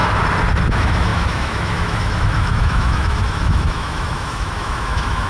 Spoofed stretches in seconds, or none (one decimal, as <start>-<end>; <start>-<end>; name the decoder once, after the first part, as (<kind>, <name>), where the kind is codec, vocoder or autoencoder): 0.7-5.3 (autoencoder, DAC-VAE)